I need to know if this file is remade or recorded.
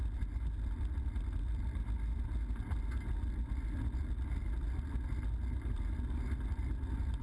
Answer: recorded